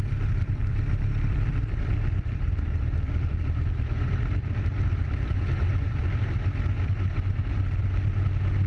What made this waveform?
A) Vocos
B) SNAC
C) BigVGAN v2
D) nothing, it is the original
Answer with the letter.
C